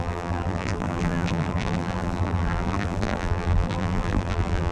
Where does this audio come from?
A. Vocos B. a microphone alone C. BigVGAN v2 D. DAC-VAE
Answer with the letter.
C